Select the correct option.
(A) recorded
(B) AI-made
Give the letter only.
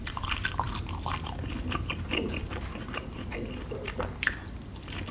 A